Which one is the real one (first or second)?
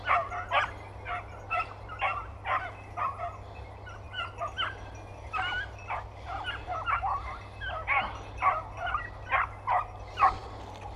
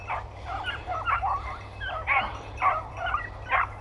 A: first